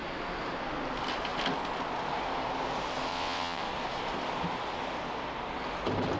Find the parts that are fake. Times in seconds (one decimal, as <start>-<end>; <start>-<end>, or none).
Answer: 3.1-3.6